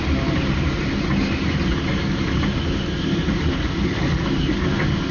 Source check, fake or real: real